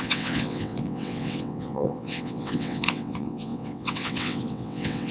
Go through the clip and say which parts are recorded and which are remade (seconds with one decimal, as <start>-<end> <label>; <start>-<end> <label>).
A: 0.0-5.1 remade